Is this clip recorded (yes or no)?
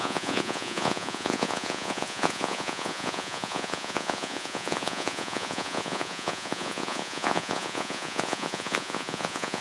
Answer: no